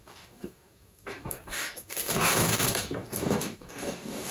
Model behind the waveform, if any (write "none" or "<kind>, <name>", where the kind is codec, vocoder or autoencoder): codec, DAC